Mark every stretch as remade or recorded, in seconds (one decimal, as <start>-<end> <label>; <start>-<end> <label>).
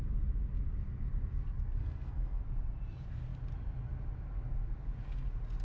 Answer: 0.0-1.8 recorded; 1.8-2.4 remade; 2.4-5.6 recorded